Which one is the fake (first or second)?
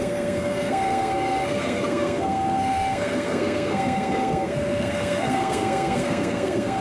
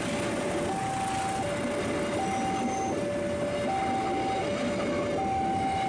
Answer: first